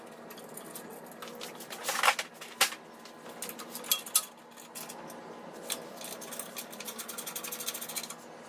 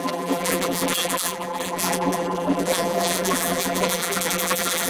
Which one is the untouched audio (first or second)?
first